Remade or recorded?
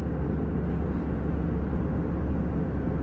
recorded